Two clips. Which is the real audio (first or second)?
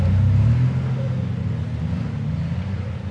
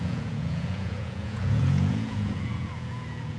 first